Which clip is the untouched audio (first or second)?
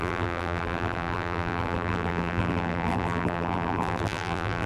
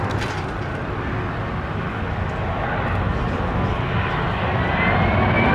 second